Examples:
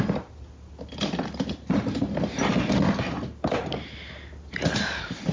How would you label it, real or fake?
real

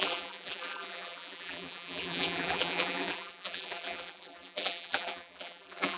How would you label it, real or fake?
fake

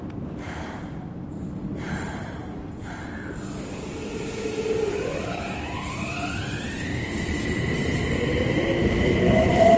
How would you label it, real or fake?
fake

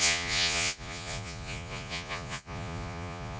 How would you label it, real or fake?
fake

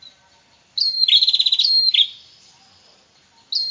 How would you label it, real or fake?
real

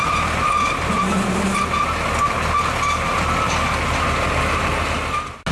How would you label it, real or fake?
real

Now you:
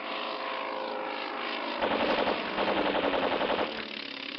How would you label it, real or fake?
real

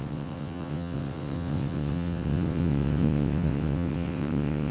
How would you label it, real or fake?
fake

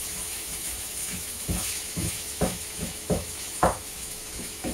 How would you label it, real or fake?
fake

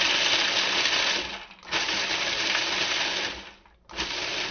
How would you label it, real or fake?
real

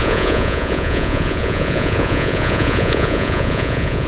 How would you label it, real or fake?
fake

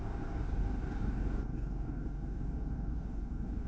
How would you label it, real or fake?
fake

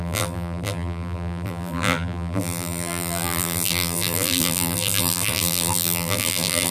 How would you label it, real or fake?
fake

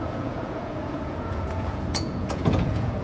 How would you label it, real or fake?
fake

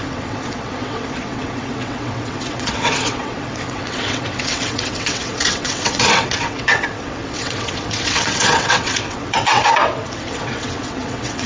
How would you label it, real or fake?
fake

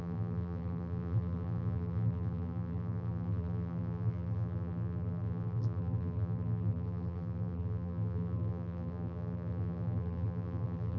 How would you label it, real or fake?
fake